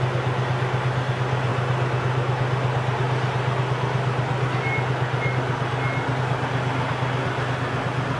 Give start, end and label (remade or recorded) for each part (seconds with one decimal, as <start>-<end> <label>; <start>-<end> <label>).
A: 0.0-8.2 recorded